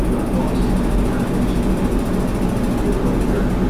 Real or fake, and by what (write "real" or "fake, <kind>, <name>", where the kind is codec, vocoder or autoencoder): real